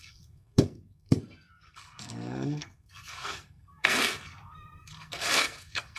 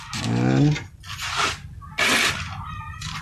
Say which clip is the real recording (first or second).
second